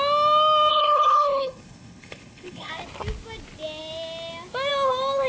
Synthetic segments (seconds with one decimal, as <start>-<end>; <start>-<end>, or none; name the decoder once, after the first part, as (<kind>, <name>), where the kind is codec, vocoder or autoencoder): 0.7-2.7 (codec, HILCodec)